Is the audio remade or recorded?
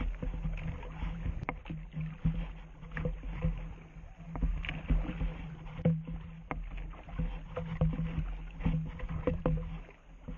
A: recorded